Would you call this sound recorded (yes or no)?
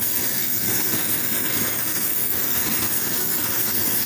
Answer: no